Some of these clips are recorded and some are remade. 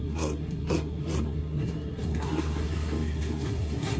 remade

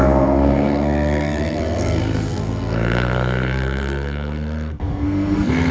remade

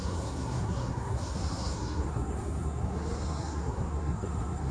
remade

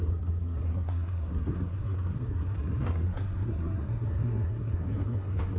remade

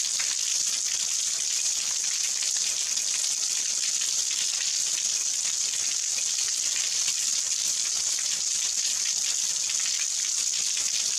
recorded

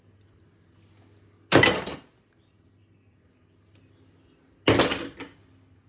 recorded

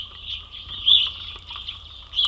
remade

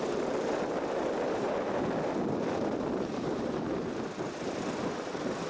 recorded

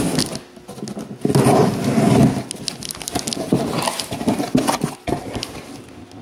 recorded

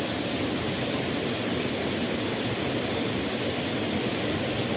recorded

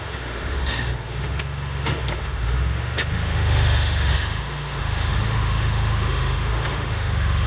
remade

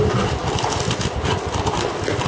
recorded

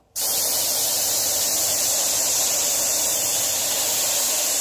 recorded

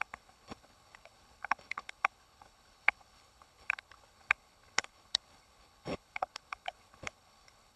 remade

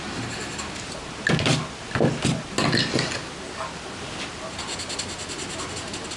recorded